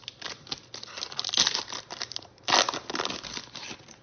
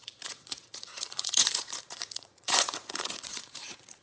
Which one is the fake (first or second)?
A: second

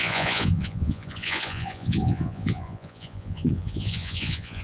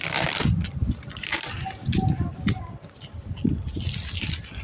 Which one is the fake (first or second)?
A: first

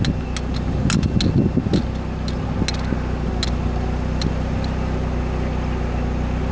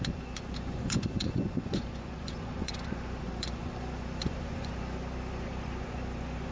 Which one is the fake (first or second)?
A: second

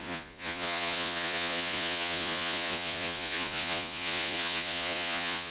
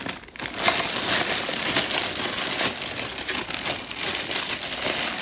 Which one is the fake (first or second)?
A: first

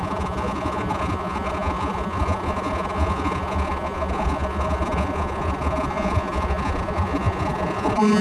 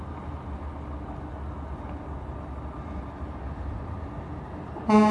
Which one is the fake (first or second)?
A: first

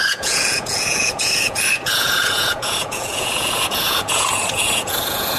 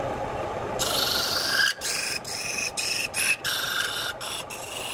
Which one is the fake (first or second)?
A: first